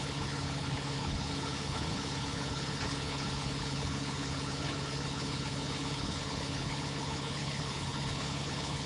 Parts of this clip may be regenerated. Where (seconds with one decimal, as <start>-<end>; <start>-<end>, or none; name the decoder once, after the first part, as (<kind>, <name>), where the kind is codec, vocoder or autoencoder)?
0.0-8.9 (codec, HILCodec)